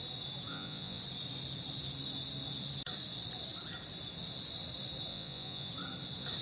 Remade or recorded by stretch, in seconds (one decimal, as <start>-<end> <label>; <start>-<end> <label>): 0.0-0.5 recorded; 0.5-1.0 remade; 1.0-5.1 recorded; 5.1-5.7 remade; 5.7-6.4 recorded